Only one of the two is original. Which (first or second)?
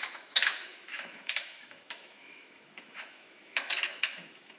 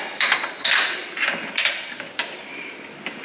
second